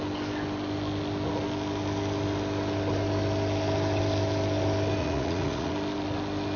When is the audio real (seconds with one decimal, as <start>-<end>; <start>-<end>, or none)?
0.0-5.0; 5.7-6.6